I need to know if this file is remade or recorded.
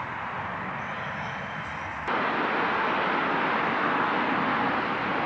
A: recorded